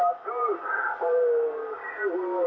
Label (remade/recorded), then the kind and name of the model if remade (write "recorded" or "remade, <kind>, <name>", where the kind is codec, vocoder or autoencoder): recorded